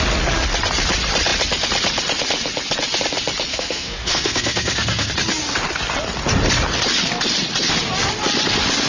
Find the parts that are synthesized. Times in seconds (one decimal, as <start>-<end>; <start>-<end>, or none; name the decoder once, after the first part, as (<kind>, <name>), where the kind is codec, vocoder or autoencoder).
3.5-5.1 (codec, SNAC)